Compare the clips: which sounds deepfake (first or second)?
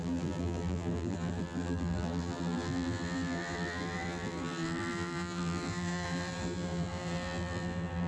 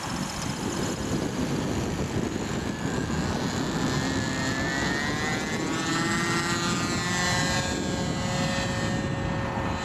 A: first